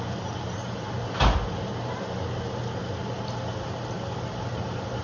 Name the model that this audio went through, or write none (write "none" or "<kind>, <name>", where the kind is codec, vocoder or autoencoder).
none